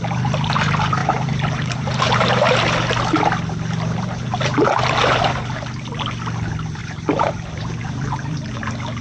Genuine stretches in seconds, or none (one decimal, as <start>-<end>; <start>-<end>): 0.0-1.0; 2.5-6.8; 8.6-9.0